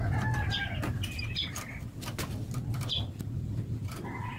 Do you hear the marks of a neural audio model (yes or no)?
no